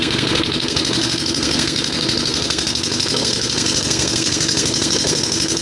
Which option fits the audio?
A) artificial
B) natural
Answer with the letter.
A